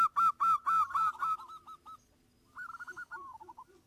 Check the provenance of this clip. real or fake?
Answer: real